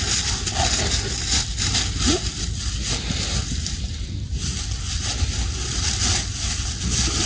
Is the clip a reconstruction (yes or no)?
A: no